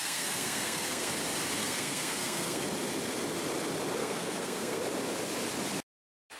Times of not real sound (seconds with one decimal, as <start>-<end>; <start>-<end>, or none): 0.0-1.1; 1.6-2.6; 4.0-4.8